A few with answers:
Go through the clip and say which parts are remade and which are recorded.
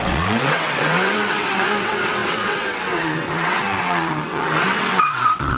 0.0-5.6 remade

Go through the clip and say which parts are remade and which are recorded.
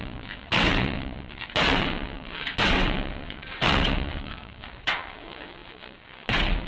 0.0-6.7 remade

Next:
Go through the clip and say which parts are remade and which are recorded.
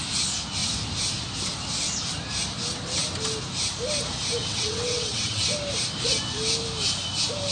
0.0-4.4 recorded; 4.4-5.5 remade; 5.5-7.5 recorded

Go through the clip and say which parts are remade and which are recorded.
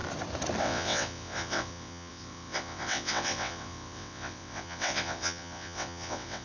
0.0-0.6 recorded; 0.6-6.4 remade